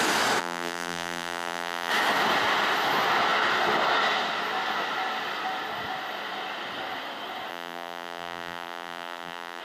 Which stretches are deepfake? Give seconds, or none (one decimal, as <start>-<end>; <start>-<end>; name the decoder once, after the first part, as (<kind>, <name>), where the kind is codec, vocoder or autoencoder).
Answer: 0.4-1.9 (vocoder, BigVGAN v2); 7.5-9.6